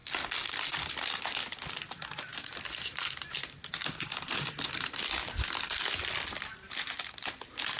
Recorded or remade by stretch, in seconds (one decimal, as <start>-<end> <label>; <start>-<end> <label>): 0.0-7.8 recorded